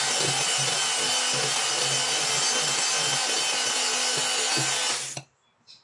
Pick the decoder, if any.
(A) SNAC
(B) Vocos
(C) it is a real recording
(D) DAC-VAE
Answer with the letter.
C